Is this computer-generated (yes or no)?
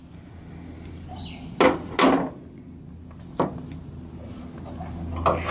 no